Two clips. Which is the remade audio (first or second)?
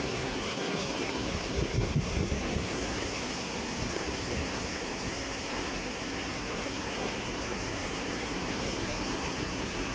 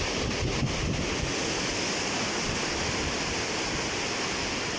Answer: first